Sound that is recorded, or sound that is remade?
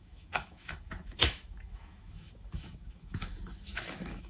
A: remade